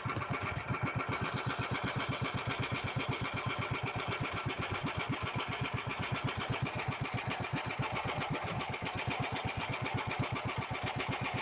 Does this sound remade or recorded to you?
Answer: recorded